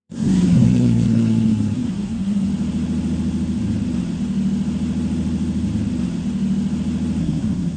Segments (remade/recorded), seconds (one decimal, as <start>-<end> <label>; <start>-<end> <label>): 0.0-2.5 remade; 2.5-7.2 recorded; 7.2-7.8 remade